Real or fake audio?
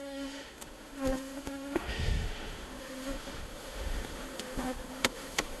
fake